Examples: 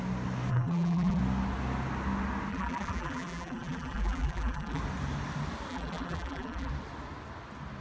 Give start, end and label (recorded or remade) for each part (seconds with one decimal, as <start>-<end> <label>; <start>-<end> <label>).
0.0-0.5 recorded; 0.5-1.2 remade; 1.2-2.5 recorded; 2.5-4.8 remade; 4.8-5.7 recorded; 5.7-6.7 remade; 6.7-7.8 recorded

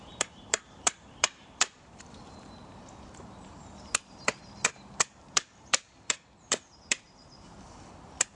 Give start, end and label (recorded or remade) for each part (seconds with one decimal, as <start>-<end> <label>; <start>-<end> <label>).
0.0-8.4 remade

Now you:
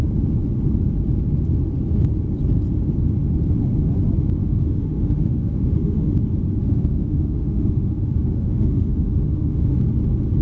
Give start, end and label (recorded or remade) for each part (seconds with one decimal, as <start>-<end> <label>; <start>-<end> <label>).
0.0-4.4 recorded; 4.4-6.1 remade; 6.1-6.6 recorded; 6.6-9.8 remade; 9.8-10.4 recorded

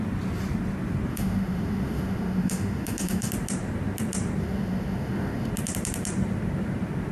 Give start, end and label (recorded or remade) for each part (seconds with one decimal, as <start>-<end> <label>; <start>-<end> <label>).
0.0-1.1 recorded; 1.1-3.3 remade; 3.3-4.4 recorded; 4.4-5.5 remade; 5.5-7.1 recorded